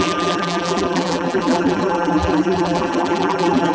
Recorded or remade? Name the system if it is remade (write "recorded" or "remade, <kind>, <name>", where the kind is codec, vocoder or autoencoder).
remade, vocoder, BigVGAN v2